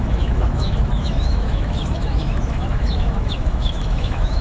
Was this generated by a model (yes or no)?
yes